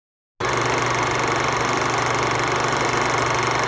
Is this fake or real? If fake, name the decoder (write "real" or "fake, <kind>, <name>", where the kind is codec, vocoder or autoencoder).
real